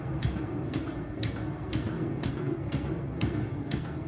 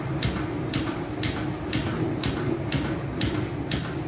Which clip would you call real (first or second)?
second